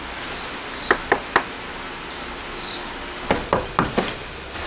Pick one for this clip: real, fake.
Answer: real